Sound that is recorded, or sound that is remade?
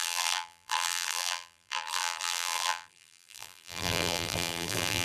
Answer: remade